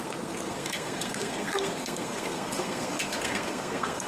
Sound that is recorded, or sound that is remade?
remade